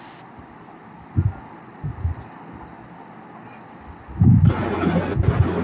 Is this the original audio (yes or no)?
yes